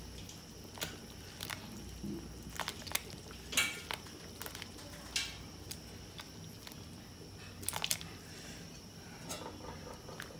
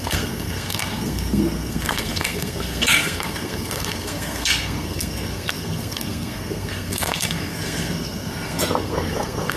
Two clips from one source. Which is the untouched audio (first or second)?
first